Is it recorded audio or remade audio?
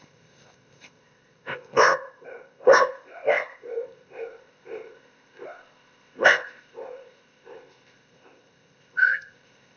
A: remade